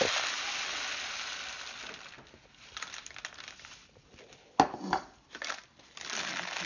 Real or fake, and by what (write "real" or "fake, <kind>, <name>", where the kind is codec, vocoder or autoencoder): real